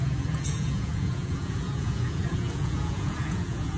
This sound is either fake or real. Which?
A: fake